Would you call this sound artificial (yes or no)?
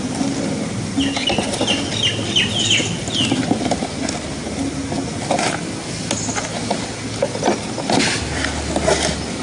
no